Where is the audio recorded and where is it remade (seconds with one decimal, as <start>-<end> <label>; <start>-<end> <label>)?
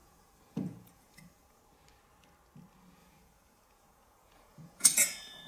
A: 0.0-1.6 remade; 1.6-3.0 recorded; 3.0-5.5 remade